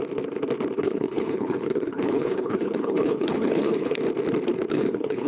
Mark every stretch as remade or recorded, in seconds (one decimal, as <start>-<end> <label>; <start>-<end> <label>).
0.0-0.8 recorded; 0.8-4.0 remade; 4.0-4.7 recorded; 4.7-5.3 remade